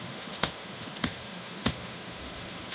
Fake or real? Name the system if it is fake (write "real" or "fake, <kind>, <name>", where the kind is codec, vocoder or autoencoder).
fake, autoencoder, DAC-VAE